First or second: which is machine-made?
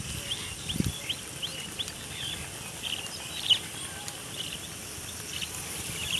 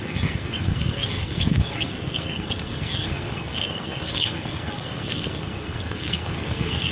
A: second